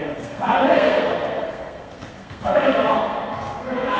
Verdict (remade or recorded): remade